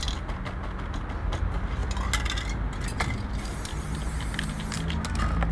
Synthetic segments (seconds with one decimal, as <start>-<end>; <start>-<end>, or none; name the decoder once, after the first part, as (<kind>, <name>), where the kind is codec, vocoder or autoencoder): none

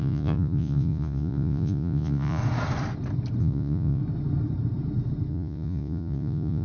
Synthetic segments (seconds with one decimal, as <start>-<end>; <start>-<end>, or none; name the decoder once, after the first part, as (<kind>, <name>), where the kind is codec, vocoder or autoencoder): 0.0-2.4 (vocoder, Vocos); 3.4-4.0; 5.3-6.6

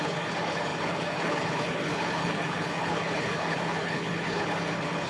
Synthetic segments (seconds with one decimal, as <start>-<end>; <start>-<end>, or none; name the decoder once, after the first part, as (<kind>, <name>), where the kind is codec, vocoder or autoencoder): 0.0-5.1 (codec, HILCodec)

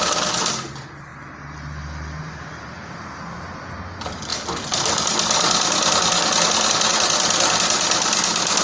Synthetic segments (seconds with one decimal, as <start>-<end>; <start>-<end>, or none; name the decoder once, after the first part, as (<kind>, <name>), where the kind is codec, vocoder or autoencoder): 4.3-5.0 (vocoder, BigVGAN v2)